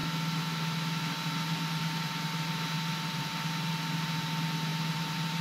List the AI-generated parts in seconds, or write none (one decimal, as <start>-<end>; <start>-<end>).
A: none